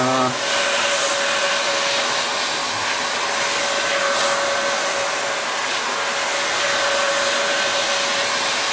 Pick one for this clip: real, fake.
real